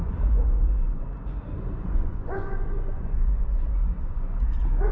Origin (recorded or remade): remade